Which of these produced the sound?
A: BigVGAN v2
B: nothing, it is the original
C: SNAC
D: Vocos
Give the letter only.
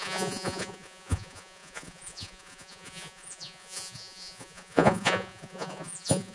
D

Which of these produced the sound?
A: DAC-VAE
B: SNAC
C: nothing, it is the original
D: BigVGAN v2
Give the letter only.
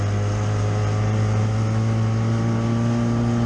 C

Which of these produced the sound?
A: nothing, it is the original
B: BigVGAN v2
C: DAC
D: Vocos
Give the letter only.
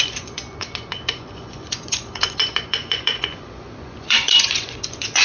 D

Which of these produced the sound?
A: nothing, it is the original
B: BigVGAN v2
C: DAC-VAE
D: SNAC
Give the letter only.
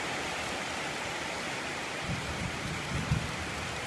A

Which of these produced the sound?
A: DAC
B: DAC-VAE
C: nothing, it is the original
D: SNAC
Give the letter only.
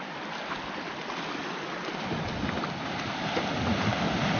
C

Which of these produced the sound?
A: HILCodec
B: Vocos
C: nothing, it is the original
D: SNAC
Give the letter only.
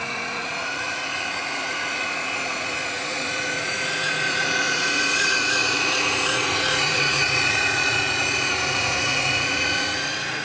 B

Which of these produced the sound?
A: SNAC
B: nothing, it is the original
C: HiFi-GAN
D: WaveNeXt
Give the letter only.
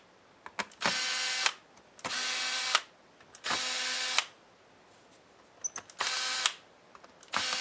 B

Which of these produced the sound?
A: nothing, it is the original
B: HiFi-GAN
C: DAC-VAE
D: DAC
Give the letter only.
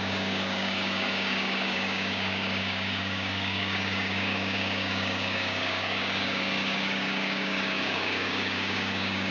D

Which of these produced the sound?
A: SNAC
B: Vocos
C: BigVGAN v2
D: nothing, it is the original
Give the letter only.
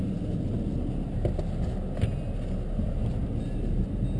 D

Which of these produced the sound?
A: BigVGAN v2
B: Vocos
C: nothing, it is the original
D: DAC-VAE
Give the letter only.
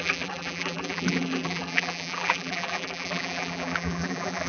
A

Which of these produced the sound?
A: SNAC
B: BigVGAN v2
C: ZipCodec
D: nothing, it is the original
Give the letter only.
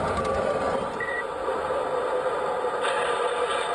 D